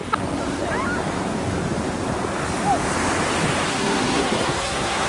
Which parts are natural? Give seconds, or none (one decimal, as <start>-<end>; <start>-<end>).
0.0-3.7

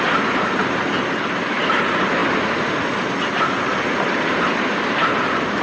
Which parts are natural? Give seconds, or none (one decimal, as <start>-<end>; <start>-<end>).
0.0-5.6